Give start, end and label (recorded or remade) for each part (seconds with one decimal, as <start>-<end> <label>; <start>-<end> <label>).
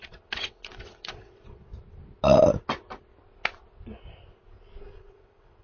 0.0-1.7 remade; 1.7-4.9 recorded; 4.9-5.6 remade